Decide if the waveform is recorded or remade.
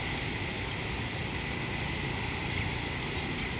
recorded